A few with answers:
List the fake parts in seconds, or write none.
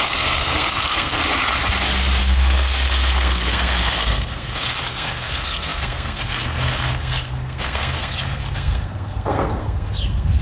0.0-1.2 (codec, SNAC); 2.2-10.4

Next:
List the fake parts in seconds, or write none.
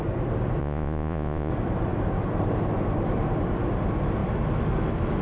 0.6-1.5 (vocoder, Vocos)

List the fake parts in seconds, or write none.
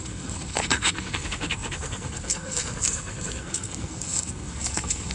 0.0-5.1 (codec, SNAC)